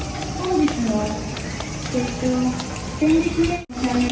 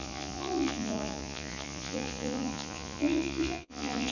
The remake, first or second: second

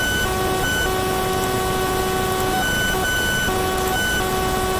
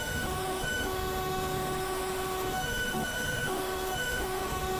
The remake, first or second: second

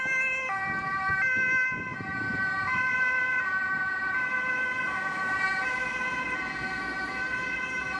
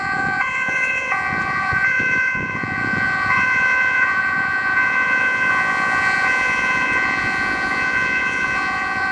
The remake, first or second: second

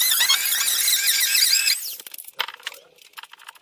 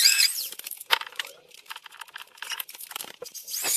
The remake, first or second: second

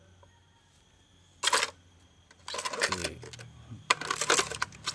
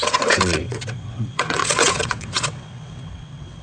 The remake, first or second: second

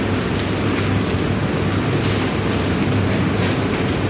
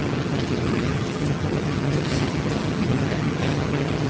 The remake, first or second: second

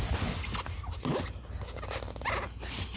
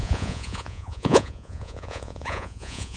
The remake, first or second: second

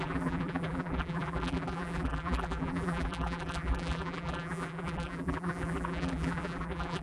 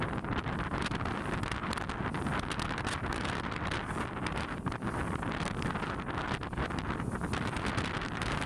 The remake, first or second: first